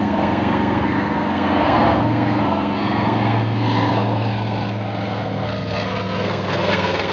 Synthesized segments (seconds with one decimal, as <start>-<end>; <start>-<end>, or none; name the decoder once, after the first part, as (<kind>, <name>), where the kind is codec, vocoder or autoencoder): 0.0-7.1 (codec, SNAC)